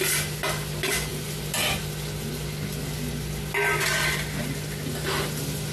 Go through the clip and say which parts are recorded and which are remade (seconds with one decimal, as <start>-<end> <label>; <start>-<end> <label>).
0.0-5.7 recorded